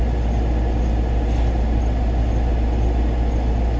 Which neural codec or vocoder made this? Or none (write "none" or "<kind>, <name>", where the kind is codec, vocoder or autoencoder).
none